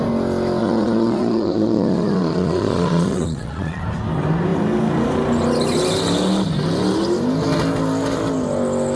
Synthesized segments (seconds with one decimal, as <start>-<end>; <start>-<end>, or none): 0.6-3.8